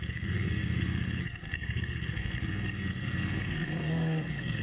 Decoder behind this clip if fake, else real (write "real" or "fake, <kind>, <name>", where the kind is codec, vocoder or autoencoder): fake, codec, SNAC